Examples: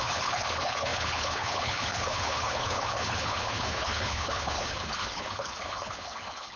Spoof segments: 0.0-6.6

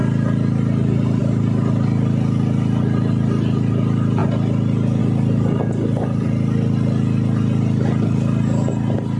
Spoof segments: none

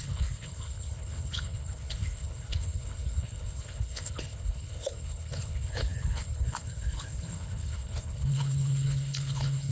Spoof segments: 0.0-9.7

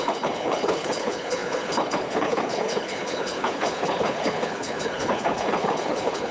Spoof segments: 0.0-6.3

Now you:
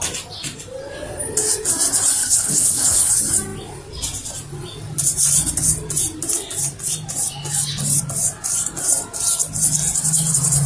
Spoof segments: 2.2-3.1

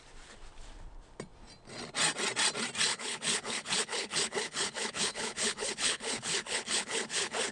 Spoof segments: 2.9-7.5

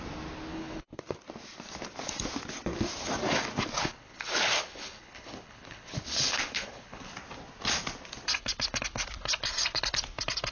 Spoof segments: 0.5-1.0; 3.8-7.1